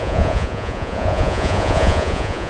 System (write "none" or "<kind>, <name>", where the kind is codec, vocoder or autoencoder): vocoder, Vocos